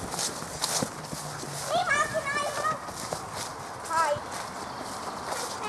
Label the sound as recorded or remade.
recorded